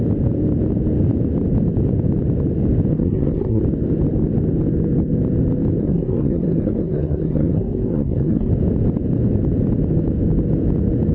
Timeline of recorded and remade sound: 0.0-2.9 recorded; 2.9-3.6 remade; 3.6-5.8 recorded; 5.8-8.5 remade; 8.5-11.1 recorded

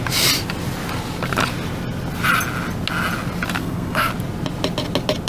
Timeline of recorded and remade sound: 0.0-3.6 recorded; 3.6-4.1 remade; 4.1-5.3 recorded

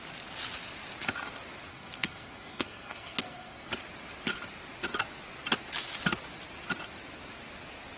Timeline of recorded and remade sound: 0.0-1.7 recorded; 1.7-3.7 remade; 3.7-8.0 recorded